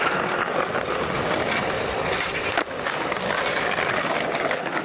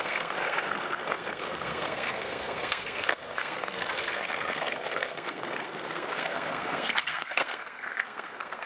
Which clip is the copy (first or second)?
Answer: second